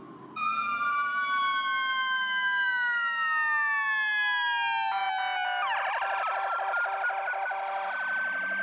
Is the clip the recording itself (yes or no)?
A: yes